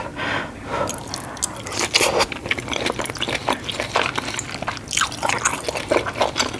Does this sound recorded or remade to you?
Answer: recorded